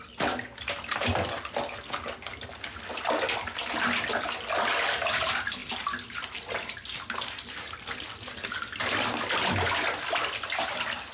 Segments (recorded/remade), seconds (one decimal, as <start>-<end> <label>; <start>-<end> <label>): 0.0-11.1 recorded